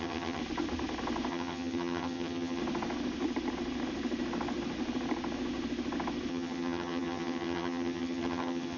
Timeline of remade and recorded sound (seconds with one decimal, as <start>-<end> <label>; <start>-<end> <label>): 0.0-0.4 remade; 0.4-1.3 recorded; 1.3-2.6 remade; 2.6-6.3 recorded; 6.3-8.8 remade

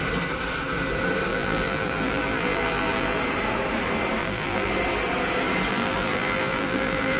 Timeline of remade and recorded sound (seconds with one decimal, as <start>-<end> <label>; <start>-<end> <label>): 0.0-1.3 recorded; 1.3-3.2 remade; 3.2-4.2 recorded; 4.2-4.7 remade; 4.7-5.7 recorded; 5.7-7.2 remade